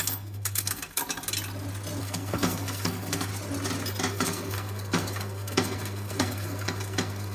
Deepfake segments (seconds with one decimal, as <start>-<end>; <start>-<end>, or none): 0.0-1.0; 2.0-3.3; 4.1-7.3